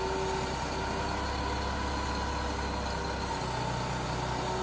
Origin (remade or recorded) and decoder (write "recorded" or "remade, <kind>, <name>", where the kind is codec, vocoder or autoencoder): recorded